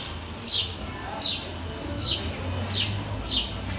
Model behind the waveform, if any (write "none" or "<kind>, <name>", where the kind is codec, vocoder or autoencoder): none